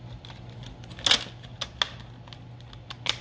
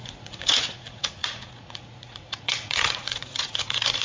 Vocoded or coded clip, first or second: second